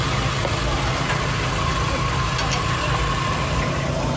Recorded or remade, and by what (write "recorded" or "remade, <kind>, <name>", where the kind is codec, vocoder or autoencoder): recorded